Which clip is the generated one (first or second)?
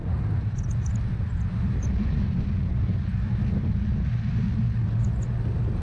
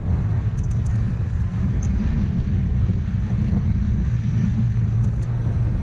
second